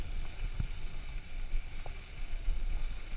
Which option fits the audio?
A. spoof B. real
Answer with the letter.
B